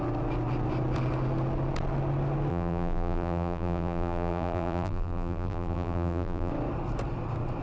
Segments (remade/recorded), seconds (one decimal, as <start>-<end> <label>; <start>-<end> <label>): 0.0-2.5 recorded; 2.5-6.5 remade; 6.5-7.6 recorded